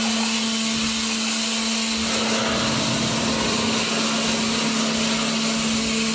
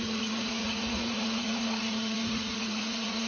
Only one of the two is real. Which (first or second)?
first